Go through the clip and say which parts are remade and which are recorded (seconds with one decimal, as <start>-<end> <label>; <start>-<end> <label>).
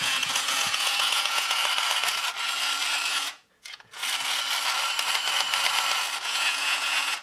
0.0-1.6 remade; 1.6-3.1 recorded; 3.1-4.0 remade; 4.0-6.2 recorded; 6.2-7.2 remade